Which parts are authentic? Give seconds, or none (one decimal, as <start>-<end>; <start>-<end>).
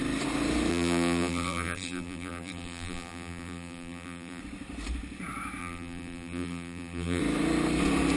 0.0-0.7; 4.4-5.6; 7.2-8.2